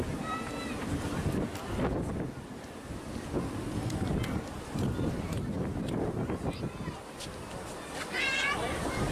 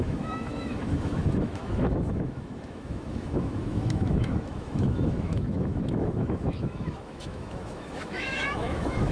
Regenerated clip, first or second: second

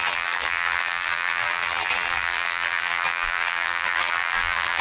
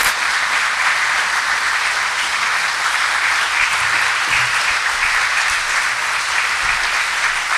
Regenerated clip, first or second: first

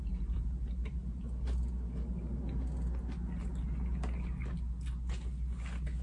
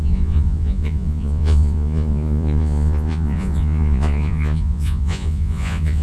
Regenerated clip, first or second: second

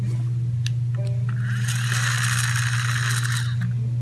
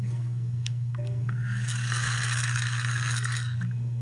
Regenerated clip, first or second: second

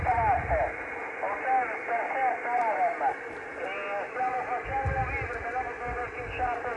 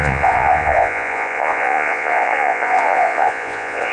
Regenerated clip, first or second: second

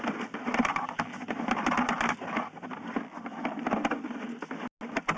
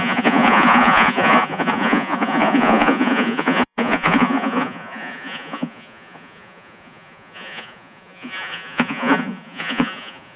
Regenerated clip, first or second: second